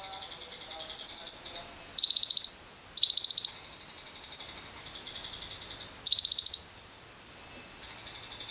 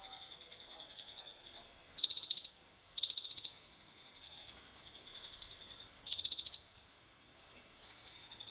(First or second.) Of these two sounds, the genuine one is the first